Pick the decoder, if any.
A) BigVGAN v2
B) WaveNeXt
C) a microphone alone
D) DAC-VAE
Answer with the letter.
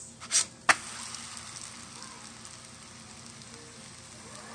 C